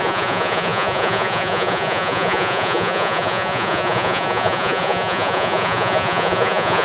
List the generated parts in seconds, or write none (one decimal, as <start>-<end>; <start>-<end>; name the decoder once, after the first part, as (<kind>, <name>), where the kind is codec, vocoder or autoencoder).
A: 0.0-6.8 (vocoder, Vocos)